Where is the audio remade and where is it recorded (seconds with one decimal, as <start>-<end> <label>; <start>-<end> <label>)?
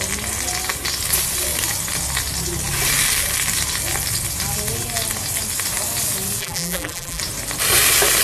0.0-6.4 recorded; 6.4-7.2 remade; 7.2-8.2 recorded